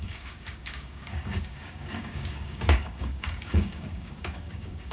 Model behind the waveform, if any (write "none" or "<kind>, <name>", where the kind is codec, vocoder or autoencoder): codec, DAC